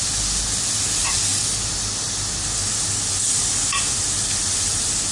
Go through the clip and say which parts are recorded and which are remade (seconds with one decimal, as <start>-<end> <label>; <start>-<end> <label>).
0.0-5.1 recorded